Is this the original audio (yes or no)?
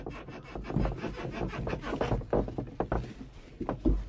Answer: yes